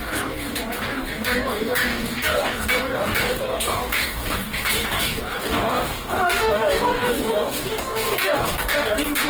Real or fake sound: fake